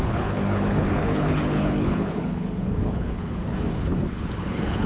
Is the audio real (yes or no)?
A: no